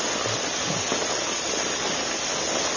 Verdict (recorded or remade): recorded